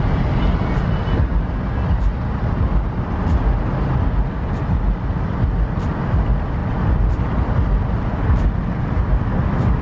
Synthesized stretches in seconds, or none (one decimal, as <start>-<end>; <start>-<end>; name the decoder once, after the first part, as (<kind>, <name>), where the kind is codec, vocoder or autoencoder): none

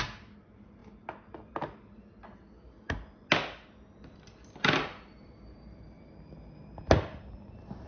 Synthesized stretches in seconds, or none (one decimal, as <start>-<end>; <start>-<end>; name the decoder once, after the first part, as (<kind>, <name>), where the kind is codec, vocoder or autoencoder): none

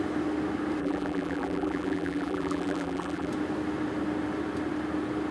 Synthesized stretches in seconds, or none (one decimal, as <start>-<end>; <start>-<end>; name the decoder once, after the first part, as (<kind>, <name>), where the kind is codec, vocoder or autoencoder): 0.8-3.3 (vocoder, BigVGAN v2)

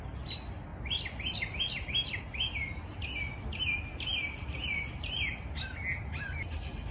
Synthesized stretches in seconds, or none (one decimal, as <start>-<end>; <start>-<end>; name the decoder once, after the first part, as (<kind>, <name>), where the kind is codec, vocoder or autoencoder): 0.7-2.2 (vocoder, BigVGAN v2); 4.1-5.3

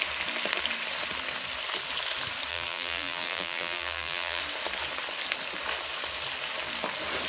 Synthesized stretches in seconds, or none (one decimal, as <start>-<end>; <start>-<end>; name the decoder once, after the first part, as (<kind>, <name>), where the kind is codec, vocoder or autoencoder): 2.5-4.4 (vocoder, BigVGAN v2)

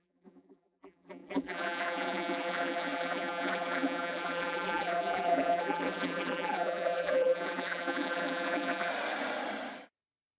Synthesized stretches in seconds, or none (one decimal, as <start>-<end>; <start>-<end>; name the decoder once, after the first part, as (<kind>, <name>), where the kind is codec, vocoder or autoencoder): 0.0-8.9 (vocoder, BigVGAN v2)

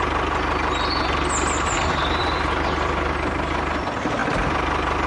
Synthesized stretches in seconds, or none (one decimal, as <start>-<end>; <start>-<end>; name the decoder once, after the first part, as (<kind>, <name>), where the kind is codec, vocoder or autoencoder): 2.2-3.5 (vocoder, BigVGAN v2)

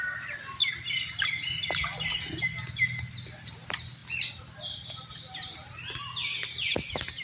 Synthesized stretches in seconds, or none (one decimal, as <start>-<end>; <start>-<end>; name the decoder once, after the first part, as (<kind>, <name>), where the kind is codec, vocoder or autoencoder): none